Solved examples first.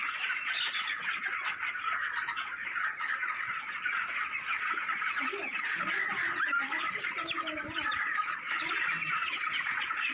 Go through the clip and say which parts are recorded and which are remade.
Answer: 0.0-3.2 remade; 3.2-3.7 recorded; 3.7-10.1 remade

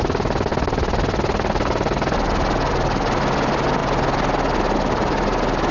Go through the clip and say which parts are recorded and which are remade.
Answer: 0.0-5.7 recorded

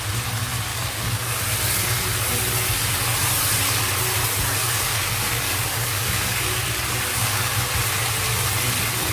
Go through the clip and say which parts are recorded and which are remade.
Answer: 0.0-0.7 recorded; 0.7-1.4 remade; 1.4-4.6 recorded; 4.6-6.6 remade; 6.6-7.1 recorded; 7.1-7.7 remade; 7.7-9.1 recorded